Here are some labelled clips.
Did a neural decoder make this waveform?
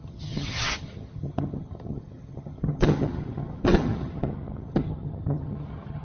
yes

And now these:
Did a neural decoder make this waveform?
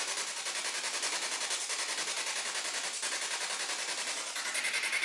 no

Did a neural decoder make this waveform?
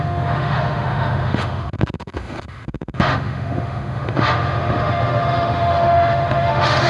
yes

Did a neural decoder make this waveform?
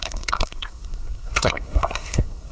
yes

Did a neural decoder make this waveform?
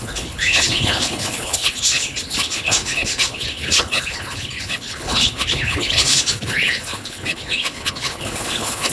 yes